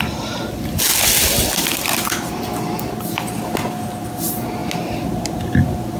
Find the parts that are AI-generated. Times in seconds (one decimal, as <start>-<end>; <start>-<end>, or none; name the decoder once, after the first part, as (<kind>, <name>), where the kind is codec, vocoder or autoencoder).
none